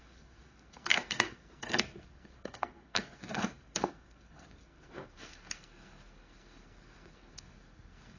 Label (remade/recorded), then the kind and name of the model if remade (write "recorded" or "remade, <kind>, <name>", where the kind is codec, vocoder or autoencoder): remade, codec, SNAC